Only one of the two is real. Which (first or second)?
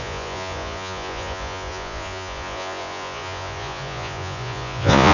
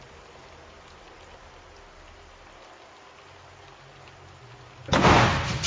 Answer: second